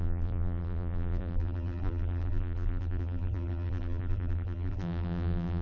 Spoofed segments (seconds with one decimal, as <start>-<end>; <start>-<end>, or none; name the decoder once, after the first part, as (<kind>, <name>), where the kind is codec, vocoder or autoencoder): 0.0-5.6 (vocoder, BigVGAN v2)